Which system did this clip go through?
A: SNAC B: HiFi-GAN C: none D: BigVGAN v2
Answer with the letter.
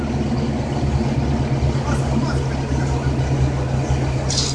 C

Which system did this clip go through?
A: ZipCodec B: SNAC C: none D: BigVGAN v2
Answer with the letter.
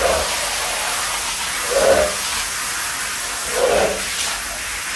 C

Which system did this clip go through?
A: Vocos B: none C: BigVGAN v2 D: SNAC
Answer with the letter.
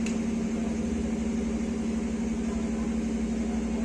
B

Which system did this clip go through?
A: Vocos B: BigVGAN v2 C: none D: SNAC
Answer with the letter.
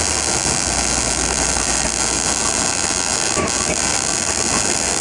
C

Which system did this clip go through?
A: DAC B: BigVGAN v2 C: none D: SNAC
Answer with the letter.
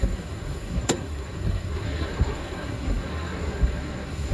D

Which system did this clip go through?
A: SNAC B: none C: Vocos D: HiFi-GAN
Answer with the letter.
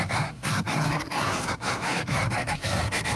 A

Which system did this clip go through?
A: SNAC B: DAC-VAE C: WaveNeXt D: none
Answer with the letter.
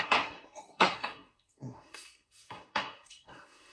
A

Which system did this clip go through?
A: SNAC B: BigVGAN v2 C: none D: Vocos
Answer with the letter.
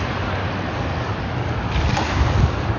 C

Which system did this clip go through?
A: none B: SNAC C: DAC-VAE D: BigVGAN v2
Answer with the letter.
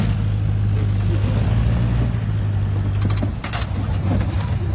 A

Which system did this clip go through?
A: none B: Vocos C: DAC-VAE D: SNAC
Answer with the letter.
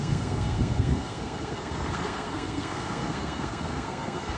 D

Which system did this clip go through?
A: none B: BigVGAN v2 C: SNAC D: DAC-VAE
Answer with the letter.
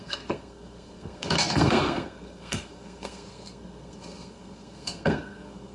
C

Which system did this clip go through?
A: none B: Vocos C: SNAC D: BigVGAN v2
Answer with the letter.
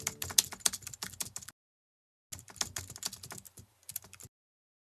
A